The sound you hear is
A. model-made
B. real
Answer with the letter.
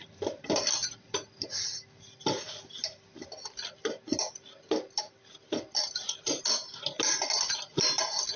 B